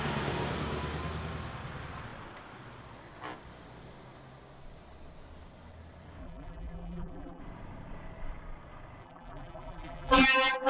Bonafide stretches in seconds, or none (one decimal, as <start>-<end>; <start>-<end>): 0.0-6.2; 7.4-9.0

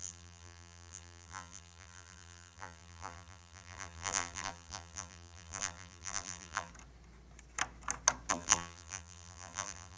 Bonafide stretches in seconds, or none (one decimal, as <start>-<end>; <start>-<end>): 6.7-8.3

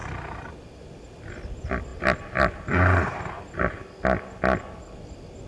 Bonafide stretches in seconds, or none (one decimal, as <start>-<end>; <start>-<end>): 0.5-5.5

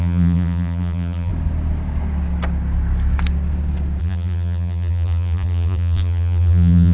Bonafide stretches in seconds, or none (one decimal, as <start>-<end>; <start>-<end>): 1.3-4.0

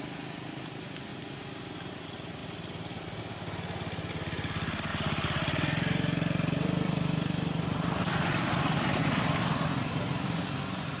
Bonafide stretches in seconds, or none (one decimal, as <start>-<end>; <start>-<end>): 0.0-2.4; 3.2-4.9; 9.0-11.0